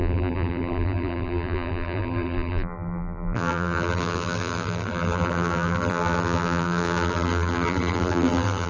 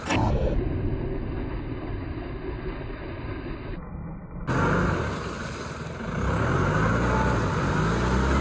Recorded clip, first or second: second